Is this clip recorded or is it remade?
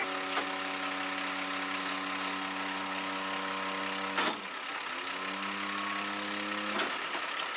recorded